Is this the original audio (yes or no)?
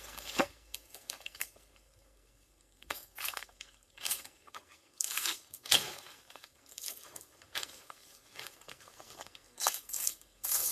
no